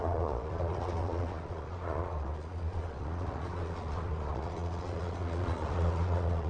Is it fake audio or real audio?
fake